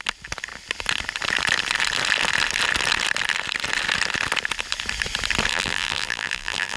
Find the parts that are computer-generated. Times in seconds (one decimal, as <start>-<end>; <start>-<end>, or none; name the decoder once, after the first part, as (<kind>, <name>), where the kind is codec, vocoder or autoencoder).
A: 5.5-6.8 (vocoder, BigVGAN v2)